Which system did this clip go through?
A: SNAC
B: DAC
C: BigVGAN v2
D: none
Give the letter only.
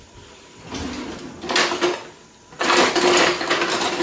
D